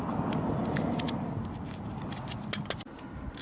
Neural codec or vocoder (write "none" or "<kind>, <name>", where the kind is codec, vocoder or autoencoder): none